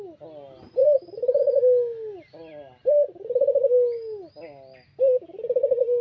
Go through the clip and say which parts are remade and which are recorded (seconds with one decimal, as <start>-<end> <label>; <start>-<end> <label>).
0.0-0.8 recorded; 0.8-1.4 remade; 1.4-2.5 recorded; 2.5-3.4 remade; 3.4-6.0 recorded